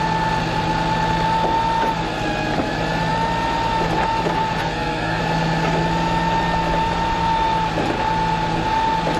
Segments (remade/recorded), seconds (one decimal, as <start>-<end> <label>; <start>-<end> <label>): 0.0-4.6 recorded; 4.6-5.2 remade; 5.2-9.2 recorded